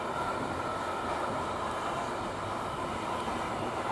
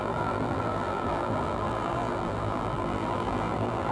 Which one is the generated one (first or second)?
second